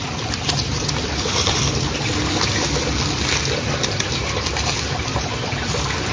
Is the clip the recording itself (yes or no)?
yes